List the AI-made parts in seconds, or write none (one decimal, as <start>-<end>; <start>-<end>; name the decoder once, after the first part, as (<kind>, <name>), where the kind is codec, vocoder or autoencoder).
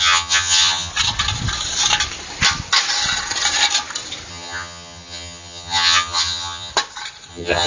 0.0-0.9 (vocoder, HiFi-GAN); 4.3-6.7; 7.3-7.7